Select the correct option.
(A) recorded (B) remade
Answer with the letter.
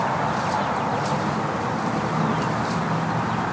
A